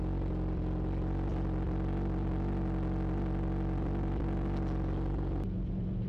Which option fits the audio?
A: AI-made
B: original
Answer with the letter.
B